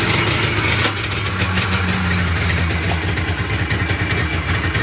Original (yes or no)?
yes